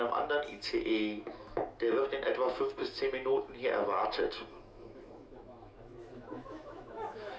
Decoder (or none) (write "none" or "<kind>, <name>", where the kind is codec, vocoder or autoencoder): autoencoder, DAC-VAE